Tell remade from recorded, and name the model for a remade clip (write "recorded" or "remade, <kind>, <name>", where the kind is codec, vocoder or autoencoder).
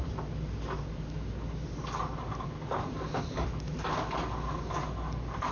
recorded